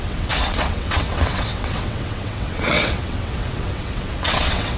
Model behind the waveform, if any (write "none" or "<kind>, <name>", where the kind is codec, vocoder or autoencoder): vocoder, WaveNeXt